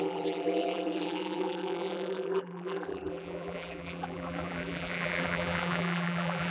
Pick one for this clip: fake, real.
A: fake